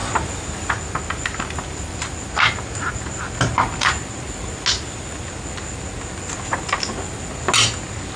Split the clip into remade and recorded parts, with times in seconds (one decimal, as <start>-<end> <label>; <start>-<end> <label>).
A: 0.0-8.2 recorded